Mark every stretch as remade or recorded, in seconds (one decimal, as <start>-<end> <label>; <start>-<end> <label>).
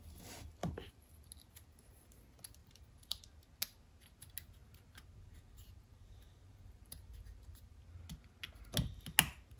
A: 0.0-2.6 recorded; 2.6-3.2 remade; 3.2-4.6 recorded; 4.6-7.8 remade; 7.8-9.6 recorded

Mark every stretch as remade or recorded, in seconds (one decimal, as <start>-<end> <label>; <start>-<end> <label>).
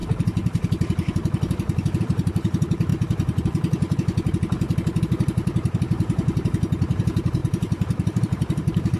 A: 0.0-2.0 recorded; 2.0-2.9 remade; 2.9-5.0 recorded; 5.0-9.0 remade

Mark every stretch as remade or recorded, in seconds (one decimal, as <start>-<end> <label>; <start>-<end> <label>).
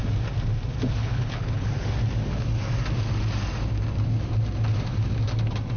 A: 0.0-1.0 recorded; 1.0-1.7 remade; 1.7-5.8 recorded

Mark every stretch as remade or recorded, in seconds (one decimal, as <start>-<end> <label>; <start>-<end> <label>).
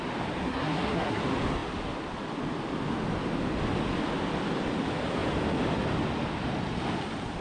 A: 0.0-0.4 recorded; 0.4-1.2 remade; 1.2-7.4 recorded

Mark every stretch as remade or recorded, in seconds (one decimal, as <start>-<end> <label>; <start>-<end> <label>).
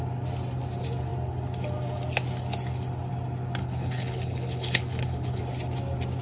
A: 0.0-3.6 recorded; 3.6-5.4 remade; 5.4-6.2 recorded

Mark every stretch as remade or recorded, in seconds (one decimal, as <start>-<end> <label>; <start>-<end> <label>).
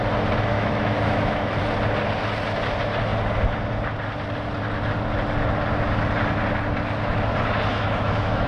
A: 0.0-0.5 recorded; 0.5-1.6 remade; 1.6-7.7 recorded; 7.7-8.5 remade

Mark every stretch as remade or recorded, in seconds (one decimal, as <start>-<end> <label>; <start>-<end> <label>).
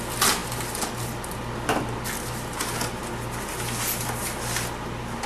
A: 0.0-5.3 recorded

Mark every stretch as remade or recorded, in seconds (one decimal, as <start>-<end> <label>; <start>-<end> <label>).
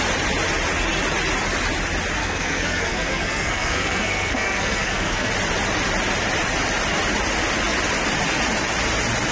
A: 0.0-2.2 recorded; 2.2-5.3 remade; 5.3-9.3 recorded